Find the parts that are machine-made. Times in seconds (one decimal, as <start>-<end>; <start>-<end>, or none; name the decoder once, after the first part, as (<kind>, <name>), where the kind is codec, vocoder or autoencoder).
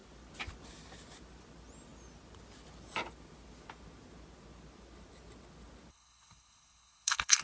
5.9-7.4 (codec, HILCodec)